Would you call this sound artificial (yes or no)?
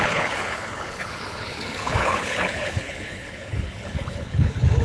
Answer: yes